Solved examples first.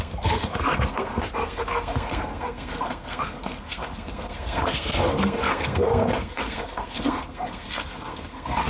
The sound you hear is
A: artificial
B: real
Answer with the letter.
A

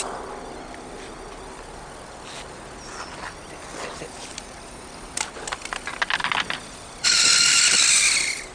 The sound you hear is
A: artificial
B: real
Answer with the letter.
B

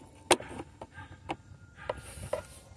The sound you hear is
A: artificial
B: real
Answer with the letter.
B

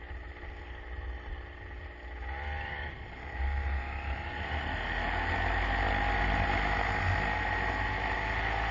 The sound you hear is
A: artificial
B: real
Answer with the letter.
B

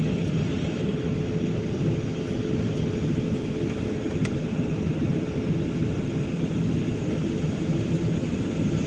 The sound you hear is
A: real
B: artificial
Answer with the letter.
A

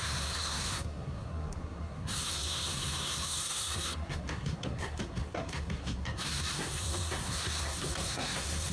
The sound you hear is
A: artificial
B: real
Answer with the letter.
A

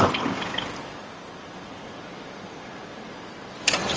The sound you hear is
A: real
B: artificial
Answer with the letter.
A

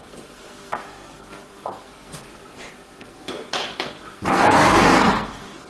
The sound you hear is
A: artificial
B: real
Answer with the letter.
A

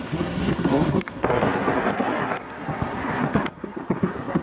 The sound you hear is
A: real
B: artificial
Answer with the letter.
B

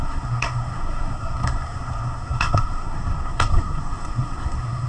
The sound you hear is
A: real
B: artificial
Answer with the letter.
B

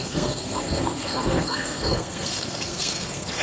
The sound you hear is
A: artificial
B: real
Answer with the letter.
A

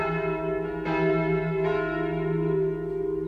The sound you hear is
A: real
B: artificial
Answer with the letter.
A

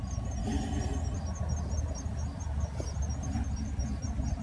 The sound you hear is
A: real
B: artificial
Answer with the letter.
A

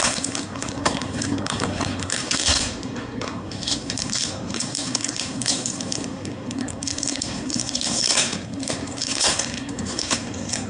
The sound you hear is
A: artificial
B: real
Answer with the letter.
A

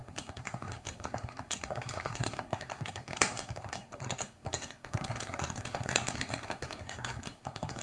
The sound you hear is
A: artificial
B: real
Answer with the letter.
A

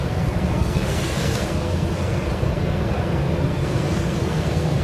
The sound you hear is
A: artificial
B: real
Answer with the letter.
A